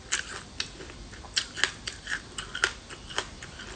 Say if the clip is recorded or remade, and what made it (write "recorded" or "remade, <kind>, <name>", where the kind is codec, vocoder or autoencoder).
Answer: recorded